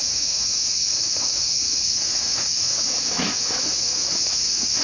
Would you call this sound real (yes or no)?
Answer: no